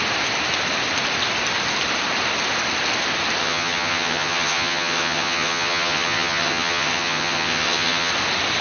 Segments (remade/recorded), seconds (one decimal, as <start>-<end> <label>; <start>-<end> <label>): 0.0-3.4 recorded; 3.4-8.1 remade; 8.1-8.6 recorded